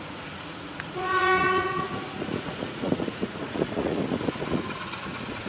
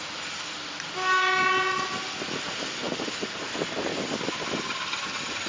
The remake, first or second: first